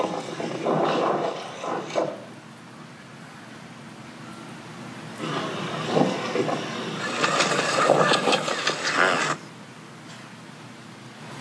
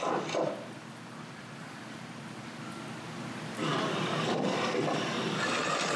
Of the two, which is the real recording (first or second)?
first